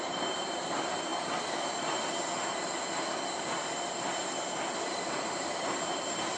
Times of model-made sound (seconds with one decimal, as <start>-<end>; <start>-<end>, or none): 0.0-1.1; 4.9-6.4